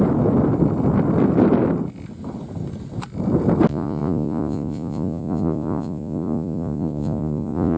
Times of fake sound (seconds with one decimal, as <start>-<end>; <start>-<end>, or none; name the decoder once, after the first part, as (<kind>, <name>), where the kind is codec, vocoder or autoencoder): 3.7-7.8 (vocoder, Vocos)